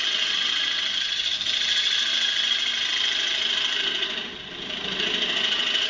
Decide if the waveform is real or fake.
fake